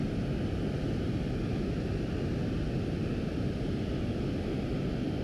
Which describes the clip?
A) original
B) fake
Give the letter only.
A